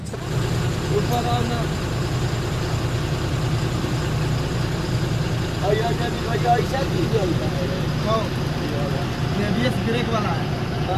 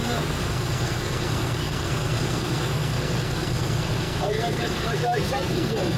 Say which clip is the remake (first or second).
second